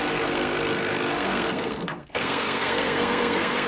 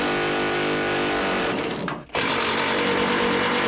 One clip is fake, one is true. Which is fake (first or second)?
first